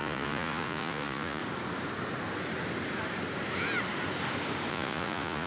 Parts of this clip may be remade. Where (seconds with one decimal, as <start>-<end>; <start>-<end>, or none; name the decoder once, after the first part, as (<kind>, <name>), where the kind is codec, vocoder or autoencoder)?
0.0-1.4 (vocoder, Vocos); 4.7-5.5

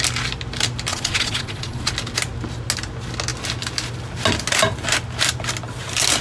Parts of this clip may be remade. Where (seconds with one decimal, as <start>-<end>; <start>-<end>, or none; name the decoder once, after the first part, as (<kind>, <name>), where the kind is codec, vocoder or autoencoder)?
0.9-1.9 (vocoder, Vocos)

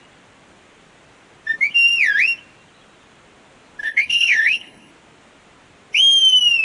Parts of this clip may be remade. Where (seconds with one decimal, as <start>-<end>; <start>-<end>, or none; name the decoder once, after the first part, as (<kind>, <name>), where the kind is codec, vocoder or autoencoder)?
3.8-4.9 (codec, HILCodec)

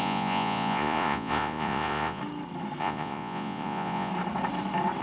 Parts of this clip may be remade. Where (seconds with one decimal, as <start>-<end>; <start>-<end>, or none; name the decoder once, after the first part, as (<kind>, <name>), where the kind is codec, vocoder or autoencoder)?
0.0-2.2 (vocoder, Vocos); 2.8-4.1

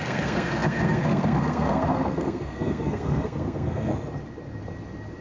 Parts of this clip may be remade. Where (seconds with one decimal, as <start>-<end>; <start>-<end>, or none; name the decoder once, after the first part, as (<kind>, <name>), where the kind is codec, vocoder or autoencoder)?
0.0-3.9 (codec, SNAC)

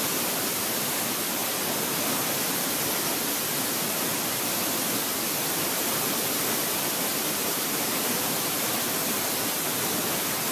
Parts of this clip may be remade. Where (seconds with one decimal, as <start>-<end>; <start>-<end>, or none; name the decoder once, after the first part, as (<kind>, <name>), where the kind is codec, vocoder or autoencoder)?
7.4-8.7 (vocoder, BigVGAN v2)